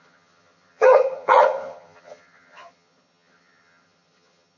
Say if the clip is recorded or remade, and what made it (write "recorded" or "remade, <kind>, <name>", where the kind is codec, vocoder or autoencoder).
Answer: remade, vocoder, HiFi-GAN